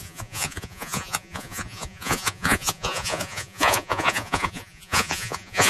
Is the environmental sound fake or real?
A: fake